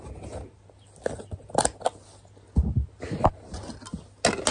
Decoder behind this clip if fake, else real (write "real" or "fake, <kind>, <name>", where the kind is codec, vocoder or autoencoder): real